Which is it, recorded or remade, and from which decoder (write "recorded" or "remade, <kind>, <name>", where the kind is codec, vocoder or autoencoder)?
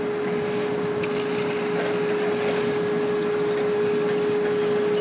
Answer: recorded